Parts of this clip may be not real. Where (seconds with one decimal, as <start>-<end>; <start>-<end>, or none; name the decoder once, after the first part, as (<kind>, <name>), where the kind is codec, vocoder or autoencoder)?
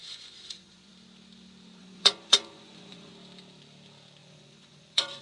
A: 0.0-0.9 (vocoder, Vocos); 1.8-3.1; 4.2-5.2